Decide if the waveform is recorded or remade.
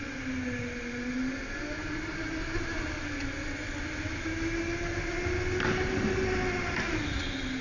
recorded